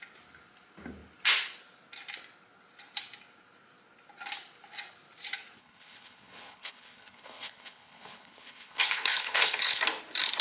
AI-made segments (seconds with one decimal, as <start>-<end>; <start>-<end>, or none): 5.6-9.8